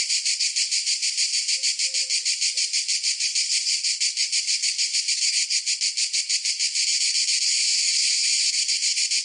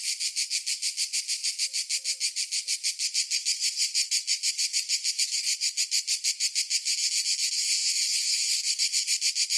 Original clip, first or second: second